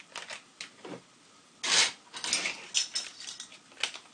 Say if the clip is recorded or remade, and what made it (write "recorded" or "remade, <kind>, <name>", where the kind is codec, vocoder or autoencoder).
recorded